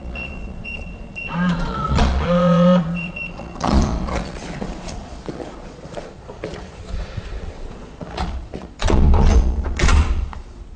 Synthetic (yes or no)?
yes